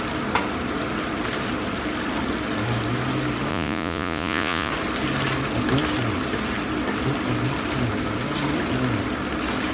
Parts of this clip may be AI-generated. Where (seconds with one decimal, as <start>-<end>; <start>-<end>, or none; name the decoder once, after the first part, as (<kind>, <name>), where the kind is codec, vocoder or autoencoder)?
3.5-4.7 (vocoder, Vocos)